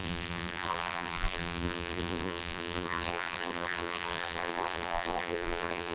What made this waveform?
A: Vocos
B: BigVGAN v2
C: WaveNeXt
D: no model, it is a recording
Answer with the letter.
B